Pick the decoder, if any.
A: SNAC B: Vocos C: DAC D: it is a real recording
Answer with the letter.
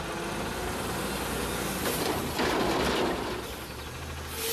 D